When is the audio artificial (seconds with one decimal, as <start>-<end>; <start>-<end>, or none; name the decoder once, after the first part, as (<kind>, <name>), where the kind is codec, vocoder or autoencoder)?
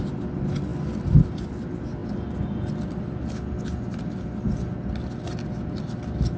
none